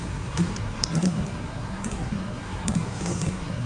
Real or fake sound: fake